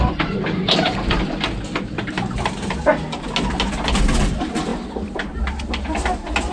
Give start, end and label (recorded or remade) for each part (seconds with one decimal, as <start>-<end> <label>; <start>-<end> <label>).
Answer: 0.0-4.7 recorded; 4.7-5.4 remade; 5.4-6.5 recorded